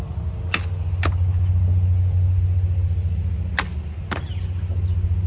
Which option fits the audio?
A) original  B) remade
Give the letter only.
A